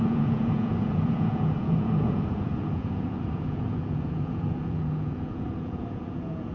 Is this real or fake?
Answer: fake